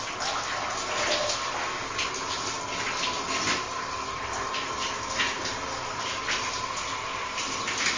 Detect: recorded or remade recorded